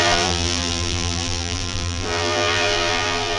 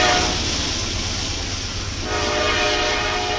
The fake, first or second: first